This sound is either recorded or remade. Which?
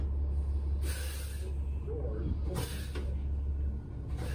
recorded